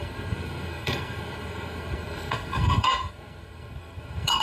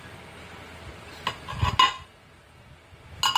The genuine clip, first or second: second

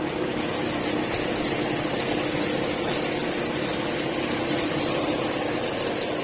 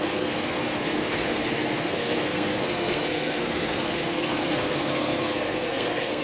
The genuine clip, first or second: first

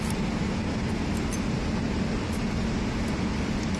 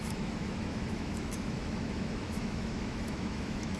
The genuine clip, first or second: first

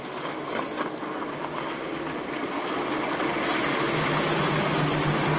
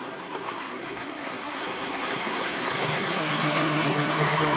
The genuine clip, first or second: first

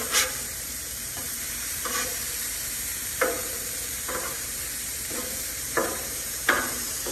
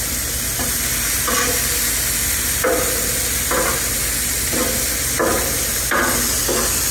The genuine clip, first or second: second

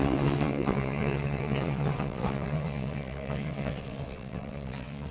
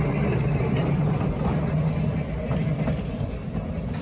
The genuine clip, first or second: second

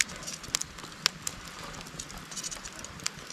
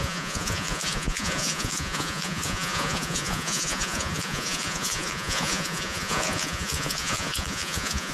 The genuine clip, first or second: first